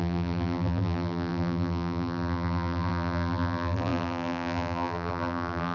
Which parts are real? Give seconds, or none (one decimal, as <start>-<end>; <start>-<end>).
none